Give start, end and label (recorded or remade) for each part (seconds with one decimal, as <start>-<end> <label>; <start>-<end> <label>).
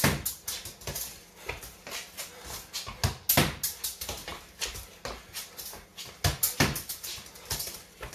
0.0-8.1 recorded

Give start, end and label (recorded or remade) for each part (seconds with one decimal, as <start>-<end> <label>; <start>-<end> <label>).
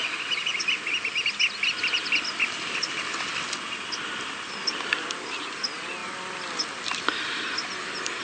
0.0-6.0 recorded; 6.0-7.0 remade; 7.0-8.2 recorded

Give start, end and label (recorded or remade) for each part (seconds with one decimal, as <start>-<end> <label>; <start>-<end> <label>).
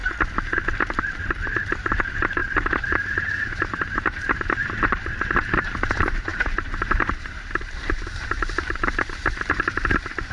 0.0-1.6 recorded; 1.6-2.4 remade; 2.4-2.9 recorded; 2.9-10.3 remade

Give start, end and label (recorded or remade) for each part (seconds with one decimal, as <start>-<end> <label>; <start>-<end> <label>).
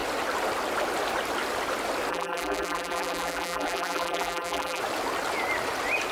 0.0-2.1 recorded; 2.1-4.8 remade; 4.8-6.1 recorded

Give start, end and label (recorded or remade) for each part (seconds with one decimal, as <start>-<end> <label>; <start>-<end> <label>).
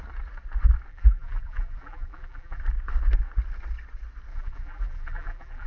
0.0-0.9 recorded; 0.9-2.6 remade; 2.6-4.3 recorded; 4.3-5.7 remade